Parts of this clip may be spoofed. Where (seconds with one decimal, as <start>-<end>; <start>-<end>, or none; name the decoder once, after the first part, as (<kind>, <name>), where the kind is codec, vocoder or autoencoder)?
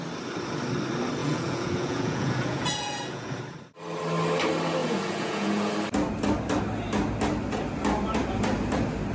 1.2-3.4 (vocoder, Vocos); 4.8-5.7